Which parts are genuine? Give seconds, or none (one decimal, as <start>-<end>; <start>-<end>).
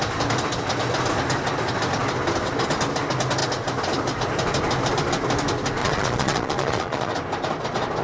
0.0-5.8; 7.1-8.0